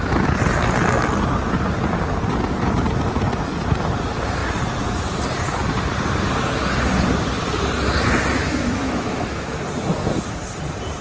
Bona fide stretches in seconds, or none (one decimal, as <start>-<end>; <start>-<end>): 0.0-8.4; 9.6-11.0